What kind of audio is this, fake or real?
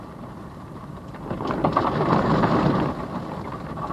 fake